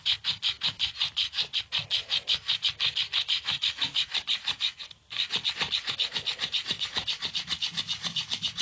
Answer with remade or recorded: recorded